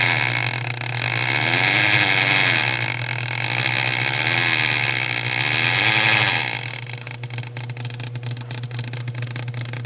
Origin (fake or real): real